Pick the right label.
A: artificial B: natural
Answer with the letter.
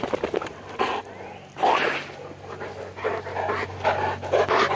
B